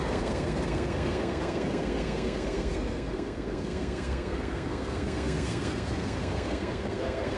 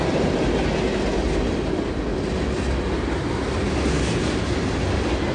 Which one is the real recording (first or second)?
second